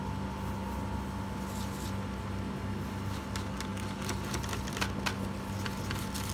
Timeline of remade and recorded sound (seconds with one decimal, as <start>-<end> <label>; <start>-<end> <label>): 0.0-6.3 recorded